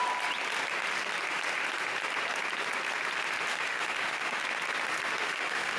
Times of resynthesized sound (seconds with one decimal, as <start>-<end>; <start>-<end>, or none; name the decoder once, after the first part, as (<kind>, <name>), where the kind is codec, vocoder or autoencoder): 3.5-4.4 (autoencoder, DAC-VAE); 5.2-5.8